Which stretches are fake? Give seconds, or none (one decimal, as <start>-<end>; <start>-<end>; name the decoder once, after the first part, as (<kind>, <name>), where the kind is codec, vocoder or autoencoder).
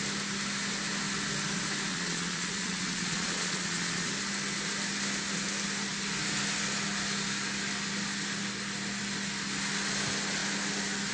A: 1.9-4.1 (vocoder, Vocos)